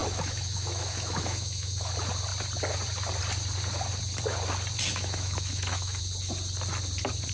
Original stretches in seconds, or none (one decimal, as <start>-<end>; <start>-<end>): 1.9-4.9; 6.0-7.3